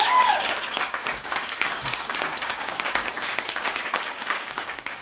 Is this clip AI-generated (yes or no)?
yes